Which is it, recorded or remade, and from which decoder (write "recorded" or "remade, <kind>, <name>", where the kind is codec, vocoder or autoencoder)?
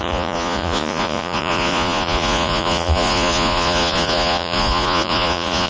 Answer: remade, vocoder, Vocos